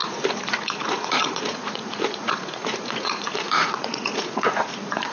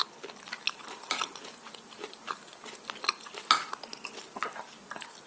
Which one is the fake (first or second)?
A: first